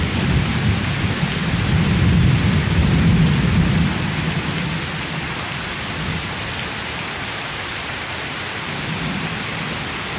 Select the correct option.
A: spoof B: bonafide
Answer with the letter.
B